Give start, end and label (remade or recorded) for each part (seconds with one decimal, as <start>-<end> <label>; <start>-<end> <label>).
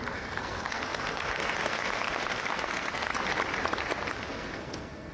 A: 0.0-3.1 remade; 3.1-4.1 recorded; 4.1-5.1 remade